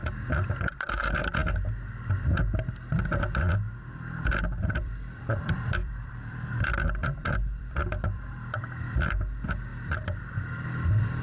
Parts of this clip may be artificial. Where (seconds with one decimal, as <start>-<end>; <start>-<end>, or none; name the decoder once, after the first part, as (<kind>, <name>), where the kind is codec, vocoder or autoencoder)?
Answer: 0.7-1.4 (vocoder, BigVGAN v2); 4.6-11.2